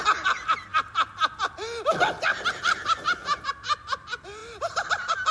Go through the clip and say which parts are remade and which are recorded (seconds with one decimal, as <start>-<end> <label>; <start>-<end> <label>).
0.0-5.3 recorded